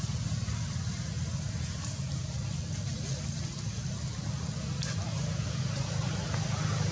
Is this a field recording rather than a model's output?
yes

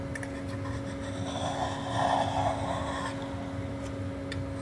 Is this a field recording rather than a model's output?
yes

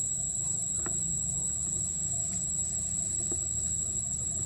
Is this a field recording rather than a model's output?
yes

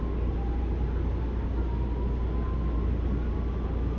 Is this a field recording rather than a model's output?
yes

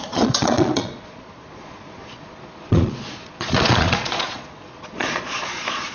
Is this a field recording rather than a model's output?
no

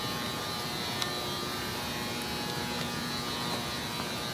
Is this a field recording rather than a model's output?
yes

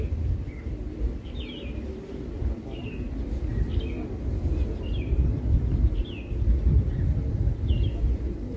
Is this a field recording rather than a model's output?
yes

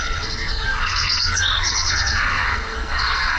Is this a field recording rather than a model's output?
no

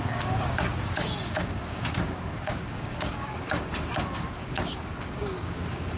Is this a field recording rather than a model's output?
no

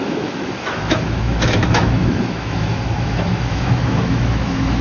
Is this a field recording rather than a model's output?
no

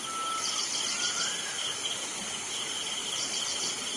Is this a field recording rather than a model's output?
yes